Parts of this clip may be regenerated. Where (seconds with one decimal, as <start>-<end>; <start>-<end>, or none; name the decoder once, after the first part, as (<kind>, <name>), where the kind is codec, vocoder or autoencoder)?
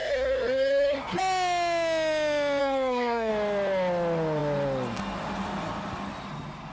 0.0-1.2 (codec, SNAC); 2.6-3.3